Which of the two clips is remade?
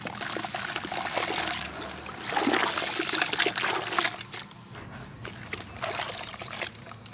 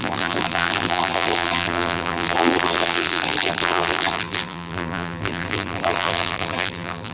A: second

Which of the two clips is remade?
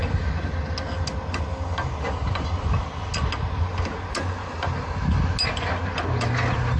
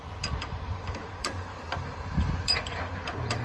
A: second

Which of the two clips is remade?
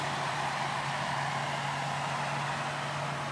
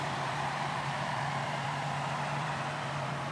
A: second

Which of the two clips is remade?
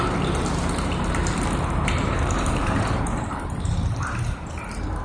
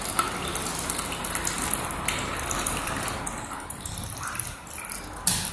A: first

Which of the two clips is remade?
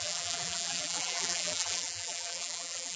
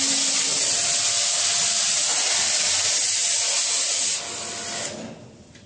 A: first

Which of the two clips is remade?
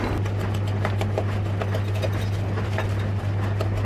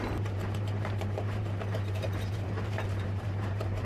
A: second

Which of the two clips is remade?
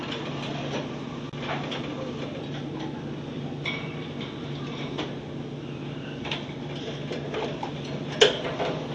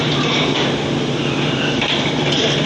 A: second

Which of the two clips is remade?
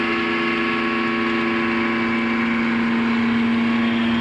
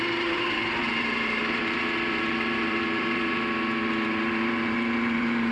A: second